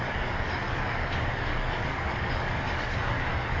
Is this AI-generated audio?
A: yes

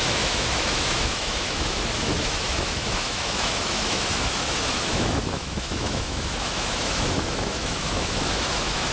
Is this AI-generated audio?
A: yes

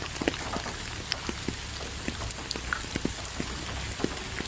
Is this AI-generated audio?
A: no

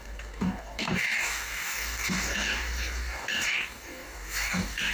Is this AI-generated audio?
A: yes